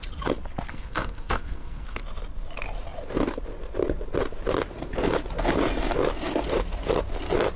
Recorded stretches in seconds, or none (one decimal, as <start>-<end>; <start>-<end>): 0.0-0.7; 2.0-7.6